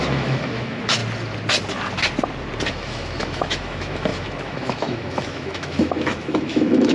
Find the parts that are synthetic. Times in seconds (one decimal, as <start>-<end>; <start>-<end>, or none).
0.0-1.0; 2.7-6.9